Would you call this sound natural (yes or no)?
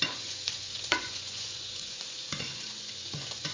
no